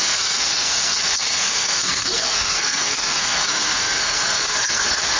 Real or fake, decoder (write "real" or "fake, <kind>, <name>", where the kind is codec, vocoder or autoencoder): fake, codec, SNAC